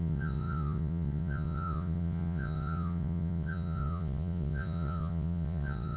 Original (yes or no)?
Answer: no